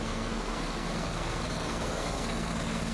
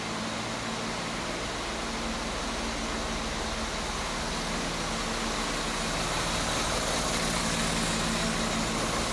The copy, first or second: first